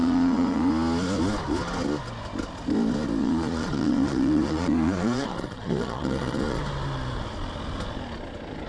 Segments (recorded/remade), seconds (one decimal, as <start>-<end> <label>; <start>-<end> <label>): 0.0-0.7 remade; 0.7-3.2 recorded; 3.2-6.6 remade; 6.6-8.7 recorded